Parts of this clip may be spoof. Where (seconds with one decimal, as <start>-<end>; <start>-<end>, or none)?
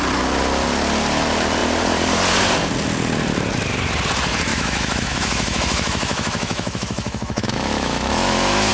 4.5-8.7